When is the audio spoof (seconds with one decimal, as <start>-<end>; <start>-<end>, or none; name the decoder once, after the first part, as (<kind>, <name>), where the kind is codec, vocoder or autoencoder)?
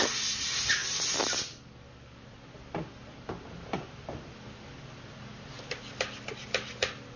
none